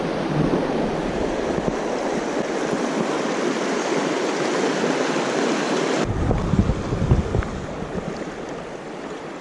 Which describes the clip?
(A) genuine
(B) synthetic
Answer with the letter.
A